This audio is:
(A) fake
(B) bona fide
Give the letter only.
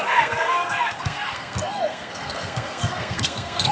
A